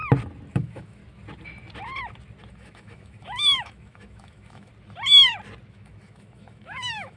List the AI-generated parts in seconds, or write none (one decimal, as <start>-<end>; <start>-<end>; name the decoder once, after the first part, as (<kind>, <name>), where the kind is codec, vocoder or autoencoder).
0.5-1.0 (autoencoder, DAC-VAE); 2.5-4.7; 5.7-7.2